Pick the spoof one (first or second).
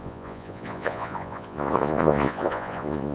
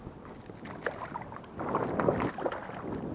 first